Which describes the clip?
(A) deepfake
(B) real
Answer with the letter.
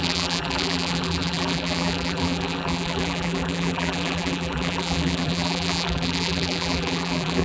A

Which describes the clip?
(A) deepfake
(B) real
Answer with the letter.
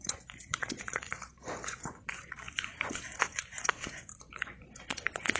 A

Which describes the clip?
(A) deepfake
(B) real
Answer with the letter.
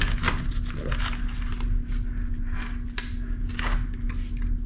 B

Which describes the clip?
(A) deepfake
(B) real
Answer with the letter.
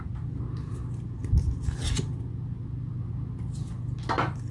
B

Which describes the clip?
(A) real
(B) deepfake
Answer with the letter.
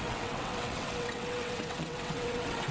B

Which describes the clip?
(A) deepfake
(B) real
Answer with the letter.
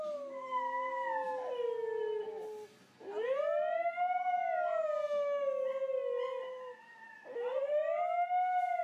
B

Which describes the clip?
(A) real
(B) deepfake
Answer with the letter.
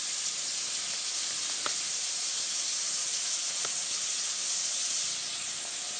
A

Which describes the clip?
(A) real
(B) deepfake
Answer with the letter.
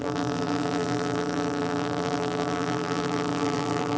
B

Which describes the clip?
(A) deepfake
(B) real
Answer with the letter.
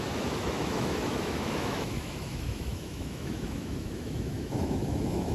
A